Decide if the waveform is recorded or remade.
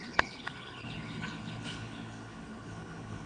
remade